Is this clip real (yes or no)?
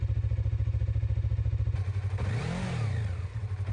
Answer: yes